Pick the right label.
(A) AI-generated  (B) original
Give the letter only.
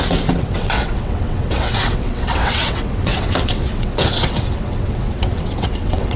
A